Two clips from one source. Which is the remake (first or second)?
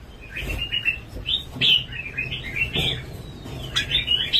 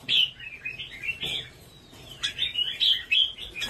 second